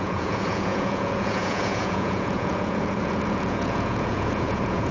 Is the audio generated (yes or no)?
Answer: yes